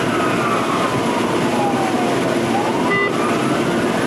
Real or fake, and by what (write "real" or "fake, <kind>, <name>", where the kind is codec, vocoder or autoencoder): real